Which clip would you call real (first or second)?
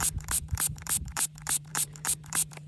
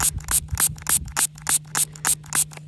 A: second